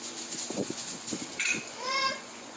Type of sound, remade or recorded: remade